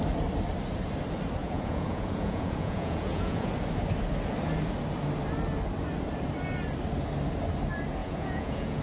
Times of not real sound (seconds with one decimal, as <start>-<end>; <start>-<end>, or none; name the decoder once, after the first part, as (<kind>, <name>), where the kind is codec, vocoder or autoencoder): 1.4-3.5 (vocoder, Vocos); 8.0-8.8